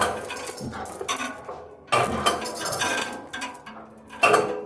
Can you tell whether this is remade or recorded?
recorded